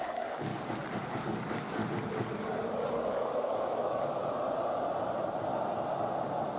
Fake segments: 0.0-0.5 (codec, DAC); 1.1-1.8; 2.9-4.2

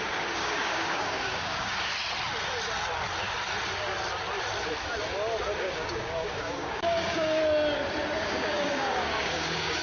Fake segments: 0.0-1.9 (codec, DAC); 5.6-7.4; 8.2-9.8

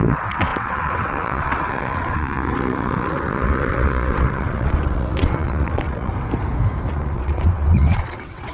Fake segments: 0.0-6.1 (vocoder, WaveNeXt); 6.9-8.5

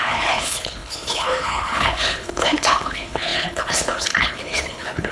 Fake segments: 0.0-5.1 (codec, HILCodec)

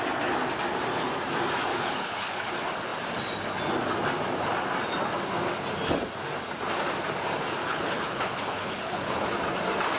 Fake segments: 1.7-2.5 (codec, HILCodec); 7.6-9.3

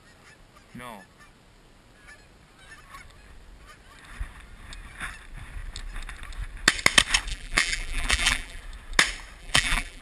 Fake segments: 7.3-8.6 (vocoder, BigVGAN v2); 9.4-10.0

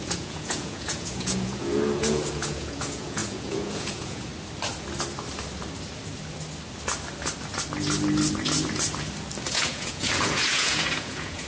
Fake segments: 0.0-4.3 (vocoder, Vocos); 9.5-11.5

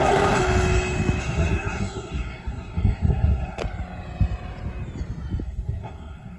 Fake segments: 0.0-0.4 (codec, SNAC); 1.2-3.6; 5.4-6.4